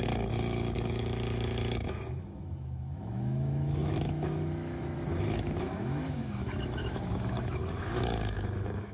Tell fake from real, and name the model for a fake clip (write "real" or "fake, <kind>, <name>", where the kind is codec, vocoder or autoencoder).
fake, autoencoder, DAC-VAE